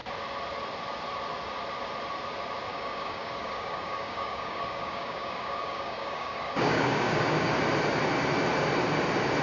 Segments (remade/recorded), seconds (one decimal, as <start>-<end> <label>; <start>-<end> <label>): 0.0-2.7 recorded; 2.7-7.6 remade; 7.6-9.4 recorded